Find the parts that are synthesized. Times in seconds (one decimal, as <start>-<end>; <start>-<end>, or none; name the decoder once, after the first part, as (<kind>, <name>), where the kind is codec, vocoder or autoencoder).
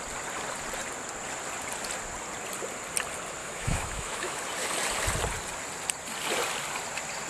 3.4-4.4 (autoencoder, DAC-VAE)